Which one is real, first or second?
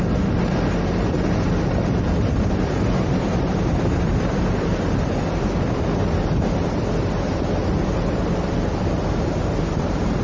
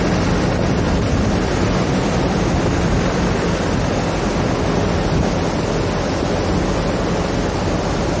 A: second